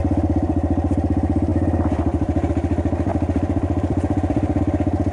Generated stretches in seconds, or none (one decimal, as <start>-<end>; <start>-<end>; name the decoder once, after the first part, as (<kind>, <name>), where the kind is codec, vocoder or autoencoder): 1.5-2.5 (vocoder, BigVGAN v2); 3.1-4.6